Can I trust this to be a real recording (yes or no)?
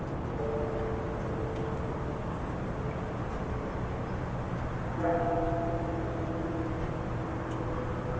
yes